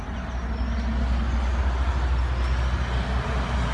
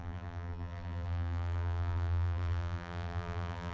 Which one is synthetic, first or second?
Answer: second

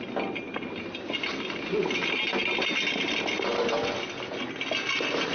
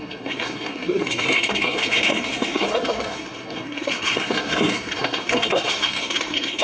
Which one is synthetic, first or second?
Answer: second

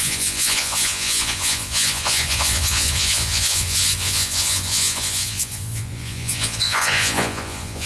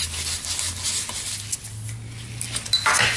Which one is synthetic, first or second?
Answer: first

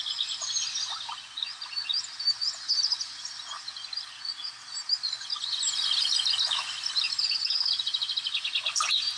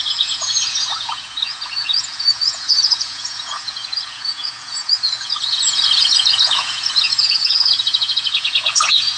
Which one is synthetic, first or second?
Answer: second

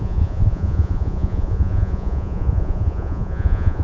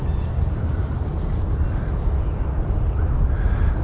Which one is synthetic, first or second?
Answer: first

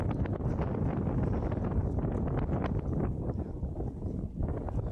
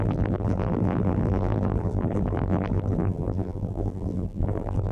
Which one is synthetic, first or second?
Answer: second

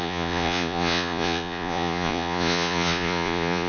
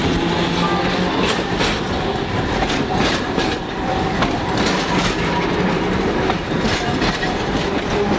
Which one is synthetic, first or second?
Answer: first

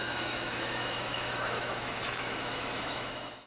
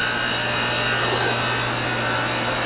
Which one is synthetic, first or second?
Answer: first